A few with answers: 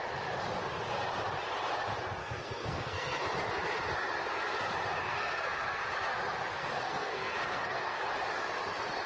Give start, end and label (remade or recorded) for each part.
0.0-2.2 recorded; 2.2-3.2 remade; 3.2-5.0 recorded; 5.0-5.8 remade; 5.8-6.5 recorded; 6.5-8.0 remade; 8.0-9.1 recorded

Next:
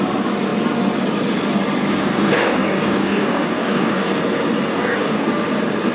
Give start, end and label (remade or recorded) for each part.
0.0-1.9 recorded; 1.9-4.2 remade; 4.2-4.7 recorded; 4.7-5.3 remade; 5.3-5.9 recorded

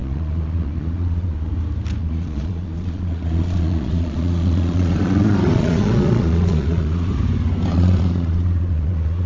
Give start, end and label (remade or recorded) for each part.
0.0-1.5 remade; 1.5-2.0 recorded; 2.0-7.1 remade; 7.1-7.7 recorded; 7.7-9.3 remade

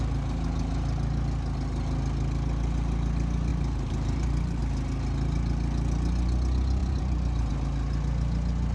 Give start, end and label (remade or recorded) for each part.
0.0-3.5 recorded; 3.5-4.6 remade; 4.6-6.8 recorded; 6.8-7.5 remade; 7.5-8.7 recorded

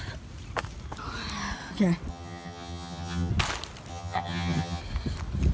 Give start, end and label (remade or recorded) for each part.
0.0-2.1 recorded; 2.1-3.3 remade; 3.3-3.9 recorded; 3.9-4.8 remade; 4.8-5.5 recorded

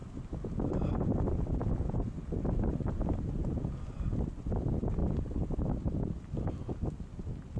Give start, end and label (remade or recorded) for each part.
0.0-5.0 recorded; 5.0-6.5 remade; 6.5-7.6 recorded

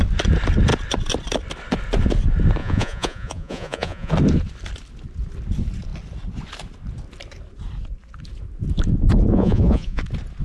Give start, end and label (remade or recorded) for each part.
0.0-2.6 recorded; 2.6-4.1 remade; 4.1-9.3 recorded; 9.3-10.0 remade; 10.0-10.4 recorded